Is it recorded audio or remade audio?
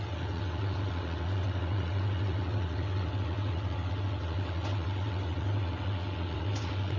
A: remade